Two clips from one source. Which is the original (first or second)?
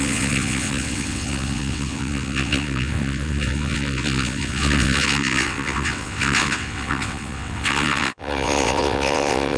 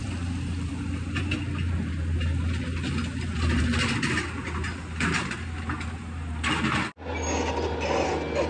second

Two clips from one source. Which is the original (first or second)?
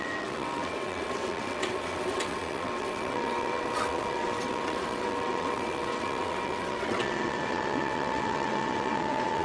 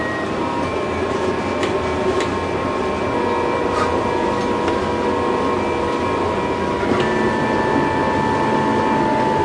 second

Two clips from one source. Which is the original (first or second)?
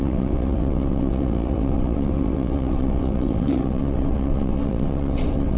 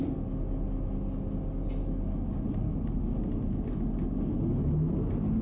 second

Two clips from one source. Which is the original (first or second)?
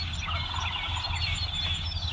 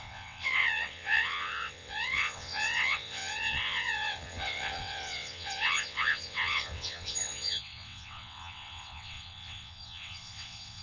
first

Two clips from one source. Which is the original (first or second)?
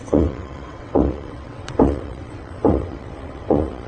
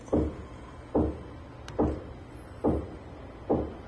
second